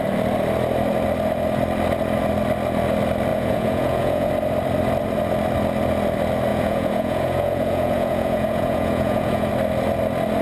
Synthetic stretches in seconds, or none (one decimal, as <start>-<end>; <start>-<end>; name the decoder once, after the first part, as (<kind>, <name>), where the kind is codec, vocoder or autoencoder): 3.3-4.3 (vocoder, Vocos); 6.5-9.5